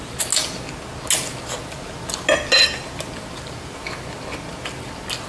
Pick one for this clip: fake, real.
real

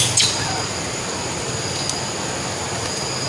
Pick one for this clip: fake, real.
real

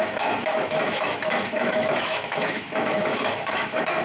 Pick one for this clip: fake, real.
fake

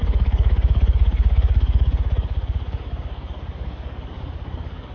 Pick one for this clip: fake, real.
fake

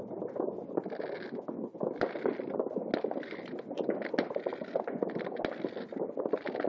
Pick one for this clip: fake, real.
real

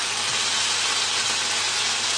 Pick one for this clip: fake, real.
real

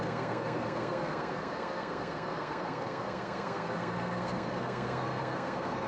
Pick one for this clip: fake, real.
fake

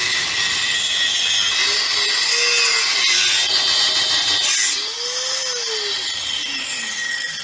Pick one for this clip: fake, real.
real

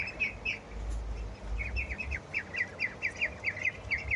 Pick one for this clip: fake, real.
real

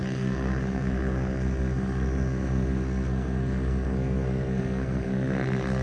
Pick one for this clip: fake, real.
fake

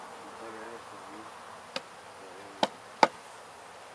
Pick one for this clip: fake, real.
real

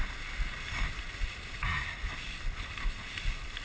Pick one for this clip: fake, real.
real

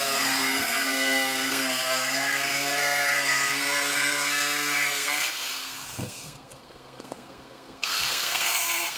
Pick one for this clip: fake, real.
fake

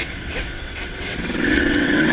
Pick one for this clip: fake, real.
fake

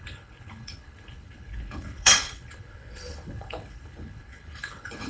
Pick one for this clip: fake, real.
fake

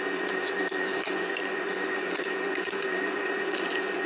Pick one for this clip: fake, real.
fake